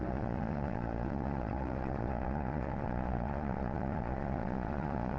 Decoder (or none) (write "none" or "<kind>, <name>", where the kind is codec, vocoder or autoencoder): vocoder, Vocos